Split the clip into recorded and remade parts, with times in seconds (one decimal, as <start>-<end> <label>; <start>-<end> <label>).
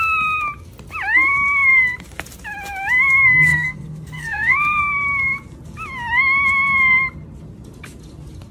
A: 0.0-3.5 recorded; 3.5-4.8 remade; 4.8-8.5 recorded